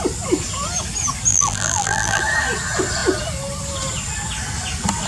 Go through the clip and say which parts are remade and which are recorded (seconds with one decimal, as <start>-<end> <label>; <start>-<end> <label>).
0.0-1.3 recorded; 1.3-2.2 remade; 2.2-5.1 recorded